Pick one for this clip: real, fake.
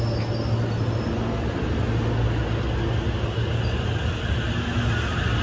real